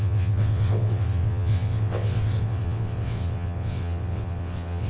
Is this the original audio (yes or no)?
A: no